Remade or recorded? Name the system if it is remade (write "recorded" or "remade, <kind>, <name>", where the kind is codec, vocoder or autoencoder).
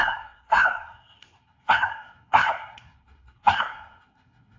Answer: remade, codec, SNAC